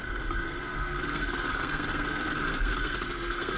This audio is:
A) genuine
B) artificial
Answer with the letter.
B